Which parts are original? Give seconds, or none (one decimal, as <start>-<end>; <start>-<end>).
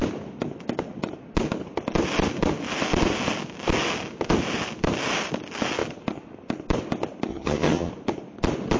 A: 0.0-7.3; 7.9-8.8